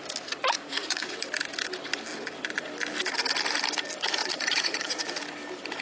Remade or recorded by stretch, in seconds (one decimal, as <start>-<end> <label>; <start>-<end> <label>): 0.0-0.4 recorded; 0.4-1.0 remade; 1.0-4.2 recorded; 4.2-5.2 remade; 5.2-5.8 recorded